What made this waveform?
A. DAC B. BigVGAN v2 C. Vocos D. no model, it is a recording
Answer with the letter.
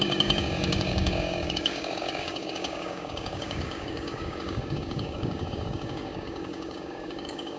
A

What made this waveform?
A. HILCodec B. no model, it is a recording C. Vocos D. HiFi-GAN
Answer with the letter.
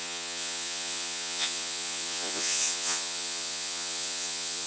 C